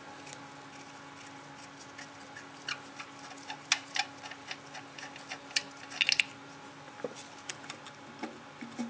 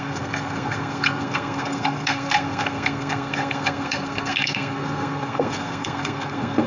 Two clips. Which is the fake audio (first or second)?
second